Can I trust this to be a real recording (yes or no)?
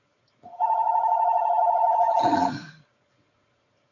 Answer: no